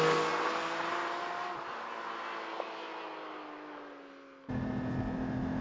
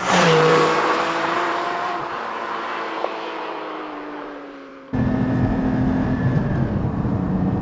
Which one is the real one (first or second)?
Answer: first